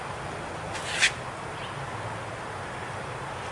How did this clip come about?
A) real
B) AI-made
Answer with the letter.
A